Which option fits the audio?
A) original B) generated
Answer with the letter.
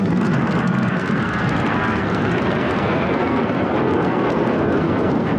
B